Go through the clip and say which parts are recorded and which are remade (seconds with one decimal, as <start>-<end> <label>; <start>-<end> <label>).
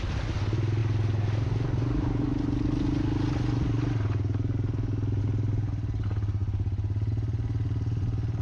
0.0-8.4 recorded